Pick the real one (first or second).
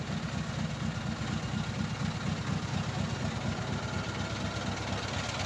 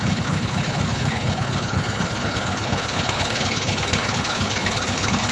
first